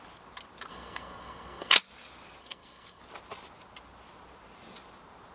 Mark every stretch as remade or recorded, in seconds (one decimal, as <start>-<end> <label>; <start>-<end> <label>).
0.0-0.7 recorded; 0.7-1.7 remade; 1.7-2.4 recorded; 2.4-3.0 remade; 3.0-5.3 recorded